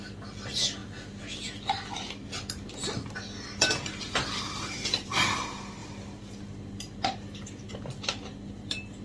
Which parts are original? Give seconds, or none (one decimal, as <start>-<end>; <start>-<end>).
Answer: 0.8-4.4